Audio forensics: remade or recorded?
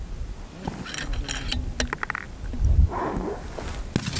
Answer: recorded